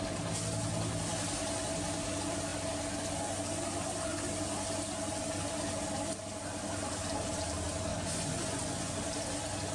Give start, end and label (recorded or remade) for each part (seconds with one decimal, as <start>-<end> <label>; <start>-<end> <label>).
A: 0.0-7.9 recorded; 7.9-8.9 remade; 8.9-9.7 recorded